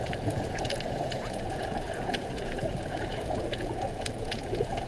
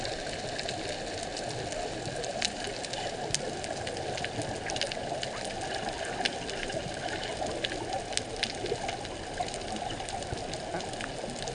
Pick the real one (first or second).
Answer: second